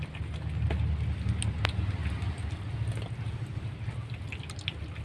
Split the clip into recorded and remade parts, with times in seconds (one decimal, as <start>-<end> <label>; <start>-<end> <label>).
0.0-5.0 recorded